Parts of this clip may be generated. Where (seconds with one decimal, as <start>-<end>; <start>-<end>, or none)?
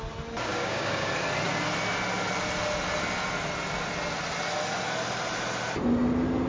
0.5-1.1